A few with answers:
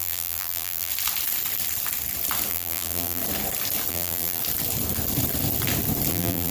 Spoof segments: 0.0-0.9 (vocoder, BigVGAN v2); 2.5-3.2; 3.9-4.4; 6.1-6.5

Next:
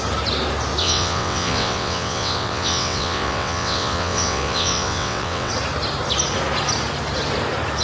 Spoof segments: 0.8-5.5 (vocoder, WaveNeXt)

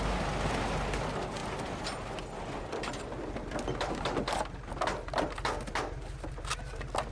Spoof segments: none

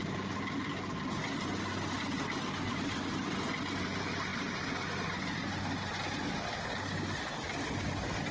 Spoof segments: none

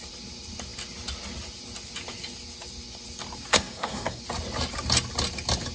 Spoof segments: 3.5-4.2 (codec, SNAC)